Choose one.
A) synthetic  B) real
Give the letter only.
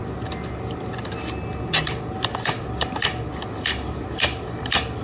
B